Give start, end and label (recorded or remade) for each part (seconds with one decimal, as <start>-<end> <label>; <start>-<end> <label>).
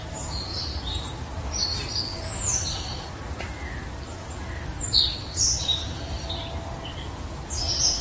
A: 0.0-0.5 recorded; 0.5-1.3 remade; 1.3-8.0 recorded